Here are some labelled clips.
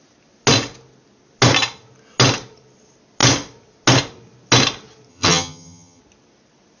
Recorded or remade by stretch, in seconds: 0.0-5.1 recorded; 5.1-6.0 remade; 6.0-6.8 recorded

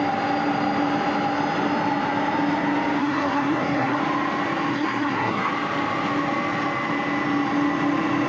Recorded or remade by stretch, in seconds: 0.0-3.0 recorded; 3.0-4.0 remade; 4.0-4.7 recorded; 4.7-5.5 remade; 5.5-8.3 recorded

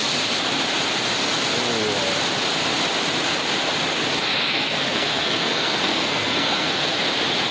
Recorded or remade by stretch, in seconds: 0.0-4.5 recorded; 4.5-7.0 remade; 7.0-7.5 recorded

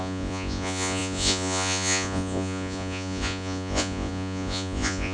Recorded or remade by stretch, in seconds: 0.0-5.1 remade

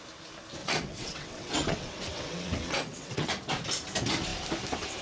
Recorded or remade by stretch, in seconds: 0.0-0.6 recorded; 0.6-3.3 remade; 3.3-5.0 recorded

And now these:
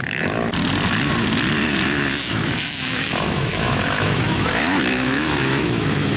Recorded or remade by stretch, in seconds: 0.0-0.5 remade; 0.5-2.3 recorded; 2.3-6.2 remade